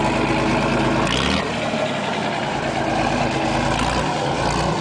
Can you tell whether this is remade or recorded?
recorded